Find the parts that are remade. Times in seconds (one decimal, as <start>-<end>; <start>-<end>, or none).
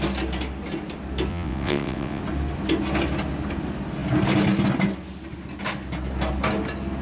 1.3-2.2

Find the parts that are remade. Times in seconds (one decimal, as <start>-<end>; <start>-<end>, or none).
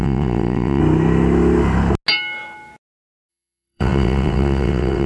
0.0-0.8; 3.3-5.1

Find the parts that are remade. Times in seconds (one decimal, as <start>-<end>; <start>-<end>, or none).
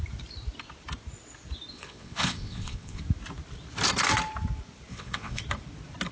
1.7-3.0; 4.9-5.4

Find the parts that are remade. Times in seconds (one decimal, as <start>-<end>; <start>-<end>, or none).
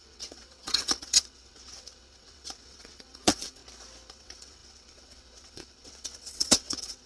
0.0-3.6; 4.1-7.1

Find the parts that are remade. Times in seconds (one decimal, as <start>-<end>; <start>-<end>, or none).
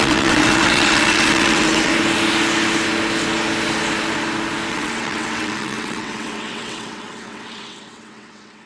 0.0-1.9; 4.7-8.7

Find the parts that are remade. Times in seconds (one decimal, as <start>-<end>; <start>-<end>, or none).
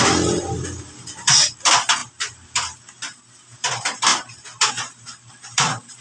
none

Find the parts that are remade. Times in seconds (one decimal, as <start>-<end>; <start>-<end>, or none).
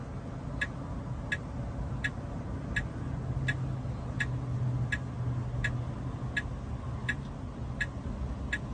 none